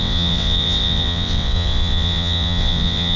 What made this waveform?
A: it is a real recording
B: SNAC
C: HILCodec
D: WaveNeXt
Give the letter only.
D